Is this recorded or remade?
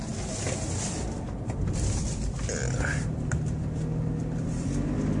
recorded